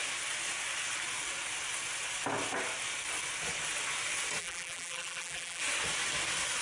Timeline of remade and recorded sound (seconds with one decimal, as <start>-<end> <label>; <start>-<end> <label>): 0.0-4.4 recorded; 4.4-5.6 remade; 5.6-6.6 recorded